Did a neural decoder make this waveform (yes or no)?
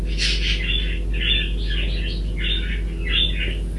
no